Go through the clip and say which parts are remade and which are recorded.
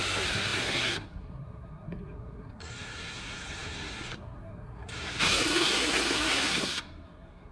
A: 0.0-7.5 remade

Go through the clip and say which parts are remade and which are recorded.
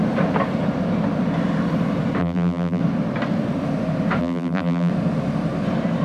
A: 0.0-2.2 recorded; 2.2-2.8 remade; 2.8-4.2 recorded; 4.2-4.9 remade; 4.9-6.0 recorded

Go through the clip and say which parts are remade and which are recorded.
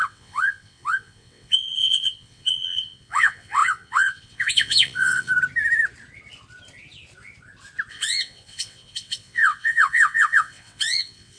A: 0.0-5.3 remade; 5.3-7.9 recorded; 7.9-11.4 remade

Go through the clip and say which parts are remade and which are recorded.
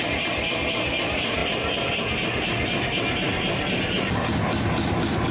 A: 0.0-5.3 recorded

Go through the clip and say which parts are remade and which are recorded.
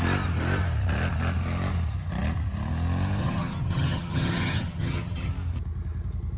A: 0.0-3.2 recorded; 3.2-5.3 remade; 5.3-6.4 recorded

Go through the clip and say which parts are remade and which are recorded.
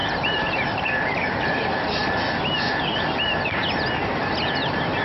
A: 0.0-1.3 remade; 1.3-5.0 recorded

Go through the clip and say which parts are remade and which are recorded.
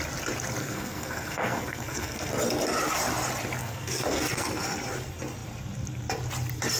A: 0.0-0.6 recorded; 0.6-2.3 remade; 2.3-3.6 recorded; 3.6-4.6 remade; 4.6-6.8 recorded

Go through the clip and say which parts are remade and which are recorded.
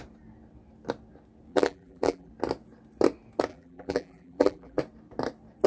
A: 0.0-1.5 recorded; 1.5-2.3 remade; 2.3-3.5 recorded; 3.5-4.8 remade; 4.8-5.7 recorded